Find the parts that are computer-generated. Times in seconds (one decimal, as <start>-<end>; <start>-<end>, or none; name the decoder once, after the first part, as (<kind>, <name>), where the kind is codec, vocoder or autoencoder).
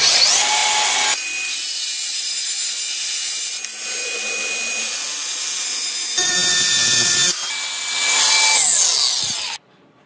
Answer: none